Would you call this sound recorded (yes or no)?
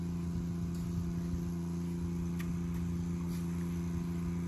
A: yes